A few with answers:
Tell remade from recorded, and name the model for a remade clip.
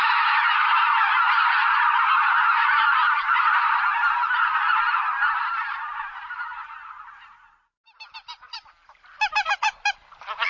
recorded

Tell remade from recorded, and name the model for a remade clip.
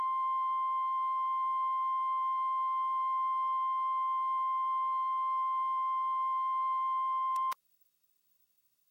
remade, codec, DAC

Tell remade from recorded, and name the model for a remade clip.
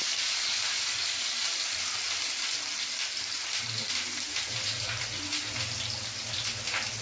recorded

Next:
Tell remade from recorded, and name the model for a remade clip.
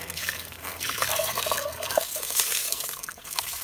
remade, codec, SNAC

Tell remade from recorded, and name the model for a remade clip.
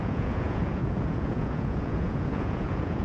remade, vocoder, Vocos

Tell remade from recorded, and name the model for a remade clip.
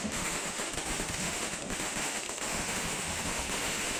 remade, autoencoder, DAC-VAE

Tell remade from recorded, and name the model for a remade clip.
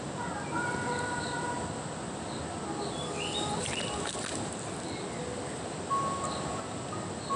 recorded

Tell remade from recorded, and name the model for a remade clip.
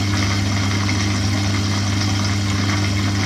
recorded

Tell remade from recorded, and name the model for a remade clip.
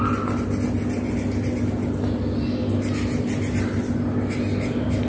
recorded